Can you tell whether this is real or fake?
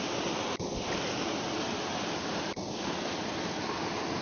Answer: real